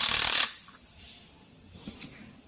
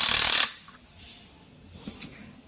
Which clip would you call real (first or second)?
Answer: second